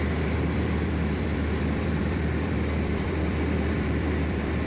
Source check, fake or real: fake